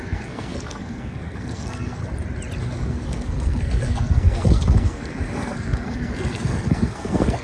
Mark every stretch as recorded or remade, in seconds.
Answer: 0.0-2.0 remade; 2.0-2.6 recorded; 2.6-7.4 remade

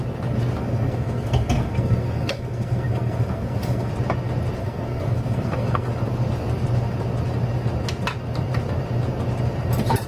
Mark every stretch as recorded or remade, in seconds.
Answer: 0.0-0.6 recorded; 0.6-3.9 remade; 3.9-4.6 recorded; 4.6-5.9 remade; 5.9-10.1 recorded

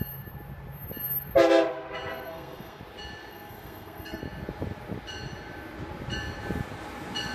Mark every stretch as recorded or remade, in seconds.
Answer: 0.0-2.1 recorded; 2.1-2.8 remade; 2.8-3.3 recorded; 3.3-4.2 remade; 4.2-7.3 recorded

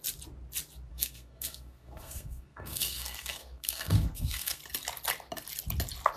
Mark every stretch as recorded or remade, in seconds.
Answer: 0.0-0.9 recorded; 0.9-4.6 remade; 4.6-6.2 recorded

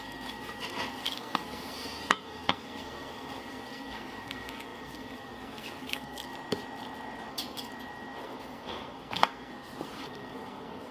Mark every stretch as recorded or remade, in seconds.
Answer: 0.0-6.3 remade; 6.3-7.3 recorded; 7.3-7.7 remade; 7.7-8.2 recorded; 8.2-10.9 remade

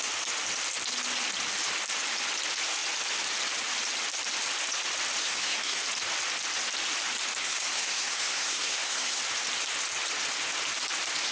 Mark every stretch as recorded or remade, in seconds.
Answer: 0.0-5.2 recorded; 5.2-5.8 remade; 5.8-7.4 recorded; 7.4-9.2 remade; 9.2-11.3 recorded